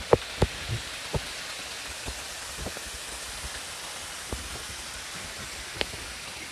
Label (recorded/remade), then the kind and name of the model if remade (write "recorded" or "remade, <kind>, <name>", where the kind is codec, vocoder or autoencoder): recorded